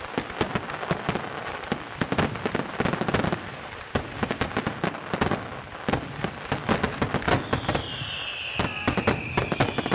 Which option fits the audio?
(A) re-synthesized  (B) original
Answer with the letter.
B